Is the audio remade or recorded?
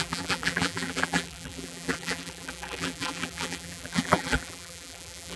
remade